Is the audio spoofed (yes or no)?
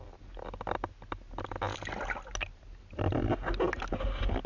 no